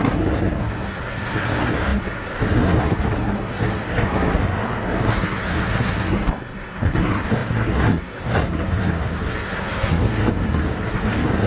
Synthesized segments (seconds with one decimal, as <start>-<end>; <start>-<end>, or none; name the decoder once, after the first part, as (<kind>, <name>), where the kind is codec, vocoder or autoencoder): 0.0-11.5 (codec, SNAC)